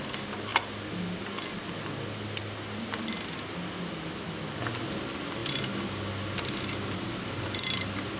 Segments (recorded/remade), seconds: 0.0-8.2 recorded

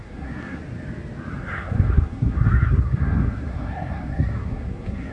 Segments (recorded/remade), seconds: 0.0-0.6 remade; 0.6-1.3 recorded; 1.3-5.1 remade

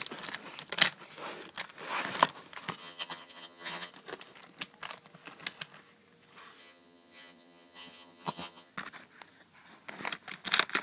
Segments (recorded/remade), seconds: 0.0-2.8 recorded; 2.8-3.9 remade; 3.9-6.6 recorded; 6.6-8.7 remade; 8.7-10.8 recorded

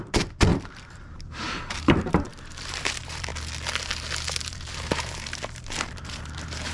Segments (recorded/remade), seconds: 0.0-3.3 remade; 3.3-4.5 recorded; 4.5-6.7 remade

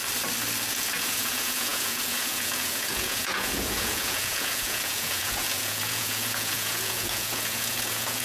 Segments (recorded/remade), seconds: 0.0-0.7 recorded; 0.7-8.2 remade